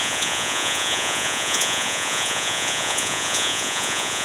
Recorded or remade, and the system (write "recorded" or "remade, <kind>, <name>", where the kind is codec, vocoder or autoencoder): remade, vocoder, Vocos